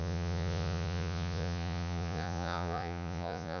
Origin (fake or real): fake